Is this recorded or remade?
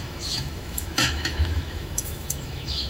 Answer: remade